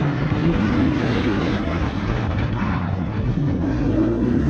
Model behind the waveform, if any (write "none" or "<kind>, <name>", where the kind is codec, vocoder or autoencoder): codec, SNAC